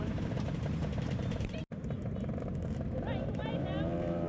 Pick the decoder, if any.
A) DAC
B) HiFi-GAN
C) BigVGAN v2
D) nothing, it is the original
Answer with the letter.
C